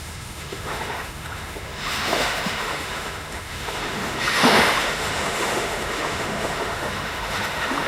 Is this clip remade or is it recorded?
remade